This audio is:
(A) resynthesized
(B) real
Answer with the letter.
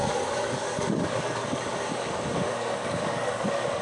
A